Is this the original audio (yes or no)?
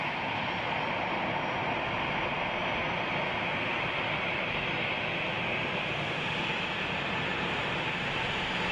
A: yes